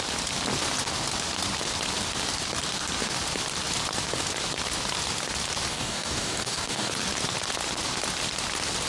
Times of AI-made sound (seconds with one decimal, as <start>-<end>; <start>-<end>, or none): 5.7-6.9